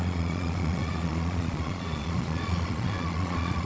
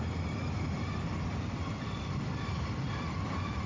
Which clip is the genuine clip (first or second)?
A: second